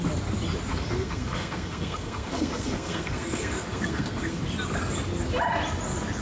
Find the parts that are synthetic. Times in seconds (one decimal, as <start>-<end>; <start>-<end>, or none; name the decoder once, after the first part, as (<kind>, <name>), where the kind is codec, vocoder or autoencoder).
0.7-4.4 (codec, SNAC)